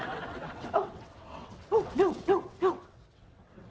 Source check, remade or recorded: remade